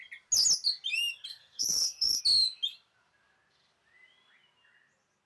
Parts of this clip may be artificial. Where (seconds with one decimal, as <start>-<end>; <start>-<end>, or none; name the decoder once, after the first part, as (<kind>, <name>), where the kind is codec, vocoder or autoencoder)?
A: 1.3-2.2 (codec, SNAC)